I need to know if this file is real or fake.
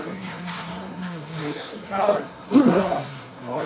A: fake